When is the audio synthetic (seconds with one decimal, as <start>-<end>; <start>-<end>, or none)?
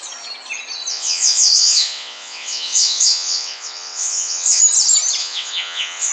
0.9-4.6; 5.2-6.1